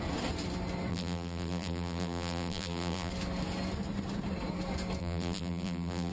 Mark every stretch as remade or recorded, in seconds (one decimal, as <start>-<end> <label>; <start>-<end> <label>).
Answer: 0.0-0.9 recorded; 0.9-3.1 remade; 3.1-5.0 recorded; 5.0-6.1 remade